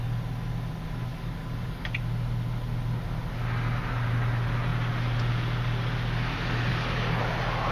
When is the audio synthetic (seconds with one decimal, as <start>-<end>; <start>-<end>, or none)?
1.1-1.9; 6.7-7.2